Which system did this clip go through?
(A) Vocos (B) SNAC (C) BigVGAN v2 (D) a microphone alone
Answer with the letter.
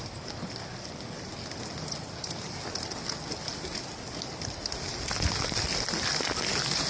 D